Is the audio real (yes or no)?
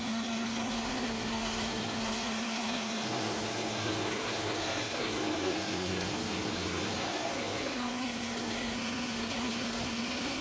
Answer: no